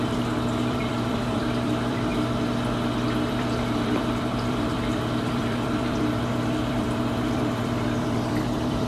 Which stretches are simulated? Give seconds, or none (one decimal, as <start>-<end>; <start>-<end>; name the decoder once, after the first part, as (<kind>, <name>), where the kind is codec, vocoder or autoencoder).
0.0-2.1 (vocoder, BigVGAN v2); 3.3-8.9